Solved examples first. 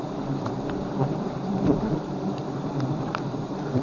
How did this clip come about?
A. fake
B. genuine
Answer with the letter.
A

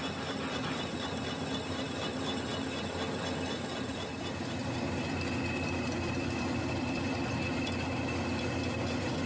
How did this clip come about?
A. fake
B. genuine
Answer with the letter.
B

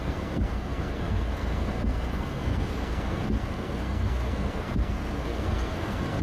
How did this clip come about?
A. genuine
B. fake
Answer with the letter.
B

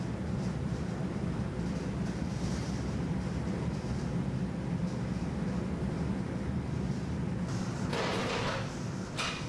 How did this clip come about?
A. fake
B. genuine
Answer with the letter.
B